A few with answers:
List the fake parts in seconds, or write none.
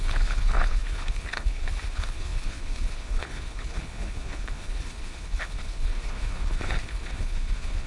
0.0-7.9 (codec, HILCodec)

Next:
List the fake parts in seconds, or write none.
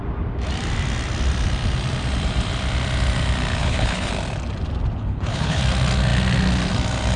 3.6-4.1 (codec, HILCodec); 5.0-5.6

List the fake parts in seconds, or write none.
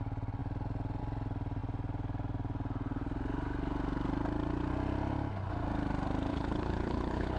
6.3-7.4 (codec, HILCodec)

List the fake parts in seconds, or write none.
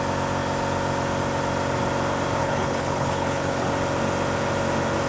2.4-3.7 (codec, HILCodec)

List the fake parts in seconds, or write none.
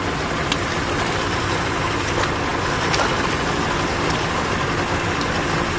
none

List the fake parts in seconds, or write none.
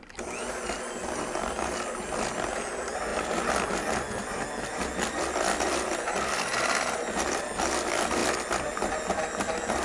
none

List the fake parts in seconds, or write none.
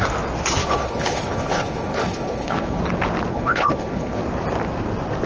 0.6-2.8 (codec, HILCodec); 3.3-4.2